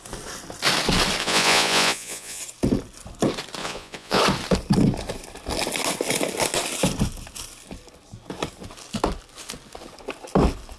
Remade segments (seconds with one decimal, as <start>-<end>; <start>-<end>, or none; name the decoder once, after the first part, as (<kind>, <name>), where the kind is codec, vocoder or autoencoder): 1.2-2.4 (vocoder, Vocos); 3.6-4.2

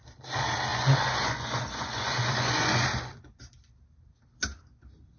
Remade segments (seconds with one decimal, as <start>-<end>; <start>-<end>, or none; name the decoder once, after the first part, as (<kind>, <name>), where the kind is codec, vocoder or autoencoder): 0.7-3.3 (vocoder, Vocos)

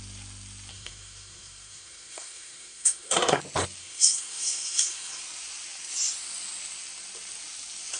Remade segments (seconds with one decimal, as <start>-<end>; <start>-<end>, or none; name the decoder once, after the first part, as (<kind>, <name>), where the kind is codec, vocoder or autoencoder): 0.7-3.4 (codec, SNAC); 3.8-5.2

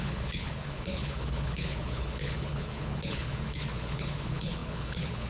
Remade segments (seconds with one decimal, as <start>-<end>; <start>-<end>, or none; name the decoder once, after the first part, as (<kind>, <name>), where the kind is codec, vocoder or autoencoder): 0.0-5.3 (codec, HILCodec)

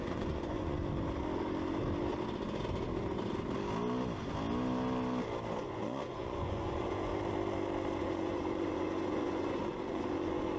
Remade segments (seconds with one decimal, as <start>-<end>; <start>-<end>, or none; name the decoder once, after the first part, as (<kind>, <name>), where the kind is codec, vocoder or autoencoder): 0.0-0.8 (vocoder, Vocos); 5.6-7.1; 8.0-10.6